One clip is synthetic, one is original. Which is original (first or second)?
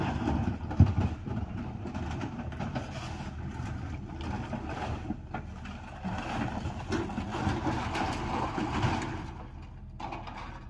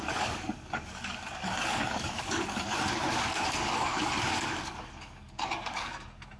first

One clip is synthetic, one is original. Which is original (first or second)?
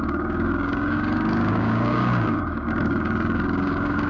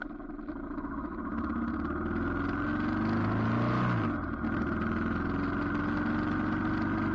second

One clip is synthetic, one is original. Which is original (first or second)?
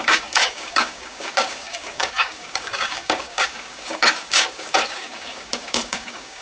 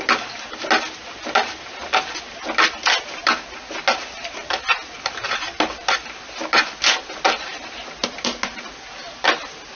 second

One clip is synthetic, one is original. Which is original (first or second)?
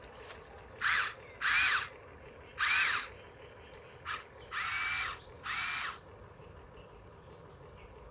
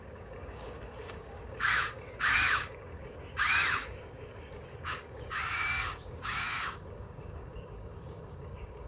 first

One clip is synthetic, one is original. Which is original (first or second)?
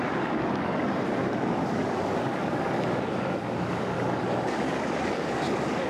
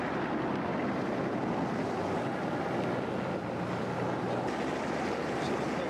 second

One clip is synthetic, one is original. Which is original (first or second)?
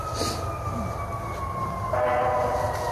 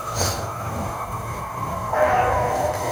first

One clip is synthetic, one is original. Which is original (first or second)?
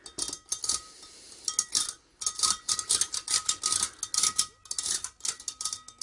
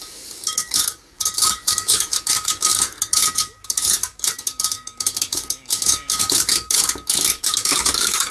first